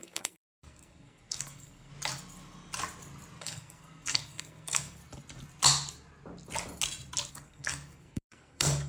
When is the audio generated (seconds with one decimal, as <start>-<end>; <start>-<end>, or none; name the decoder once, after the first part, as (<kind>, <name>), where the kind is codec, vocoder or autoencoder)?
0.0-1.9 (codec, SNAC); 3.4-5.0; 7.3-8.9